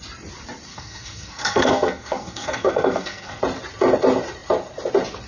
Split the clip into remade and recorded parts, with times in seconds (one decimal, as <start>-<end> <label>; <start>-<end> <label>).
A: 0.0-0.7 recorded; 0.7-3.4 remade; 3.4-5.3 recorded